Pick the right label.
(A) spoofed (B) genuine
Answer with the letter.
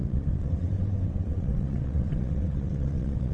A